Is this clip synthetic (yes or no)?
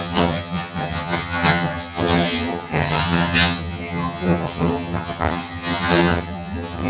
yes